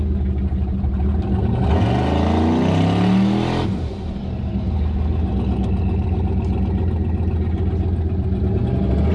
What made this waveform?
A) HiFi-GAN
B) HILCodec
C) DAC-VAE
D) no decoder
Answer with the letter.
D